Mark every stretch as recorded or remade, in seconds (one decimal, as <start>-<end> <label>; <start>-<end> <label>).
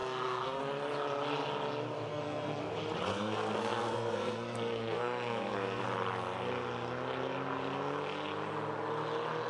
0.0-0.6 remade; 0.6-2.1 recorded; 2.1-2.6 remade; 2.6-3.1 recorded; 3.1-5.8 remade; 5.8-9.5 recorded